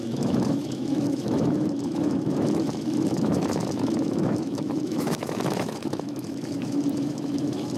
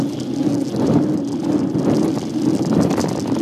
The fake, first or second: first